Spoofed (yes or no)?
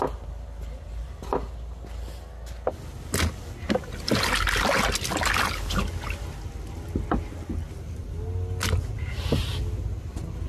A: no